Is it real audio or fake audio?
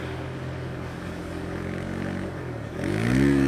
fake